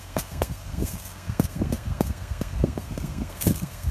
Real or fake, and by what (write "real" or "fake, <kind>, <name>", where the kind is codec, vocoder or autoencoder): fake, codec, SNAC